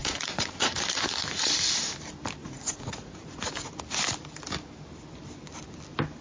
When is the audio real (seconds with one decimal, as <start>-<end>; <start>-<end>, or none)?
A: 1.8-2.4; 3.7-6.2